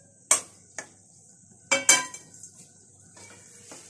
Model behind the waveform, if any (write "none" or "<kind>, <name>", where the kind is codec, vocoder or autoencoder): none